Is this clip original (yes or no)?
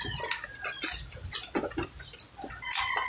yes